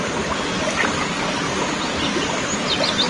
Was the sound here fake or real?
real